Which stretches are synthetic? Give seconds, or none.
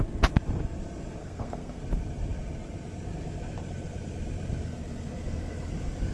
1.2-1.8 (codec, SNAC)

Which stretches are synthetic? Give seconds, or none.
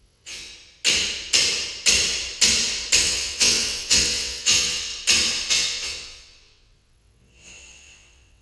0.0-0.5 (vocoder, WaveNeXt); 3.0-4.9; 5.5-8.4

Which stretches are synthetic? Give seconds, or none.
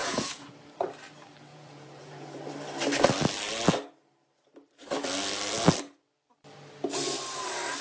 0.0-0.5 (vocoder, Vocos); 1.5-2.4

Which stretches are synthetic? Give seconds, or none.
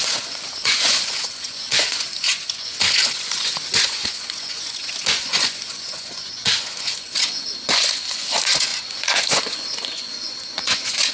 0.0-11.1 (vocoder, Vocos)